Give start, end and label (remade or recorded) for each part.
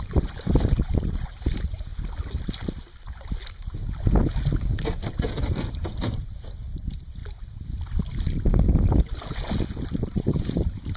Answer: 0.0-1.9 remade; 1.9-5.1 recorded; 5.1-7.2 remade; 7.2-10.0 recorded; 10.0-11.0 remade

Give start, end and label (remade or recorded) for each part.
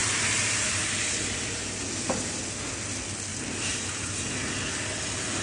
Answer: 0.0-0.8 remade; 0.8-3.3 recorded; 3.3-4.3 remade; 4.3-5.4 recorded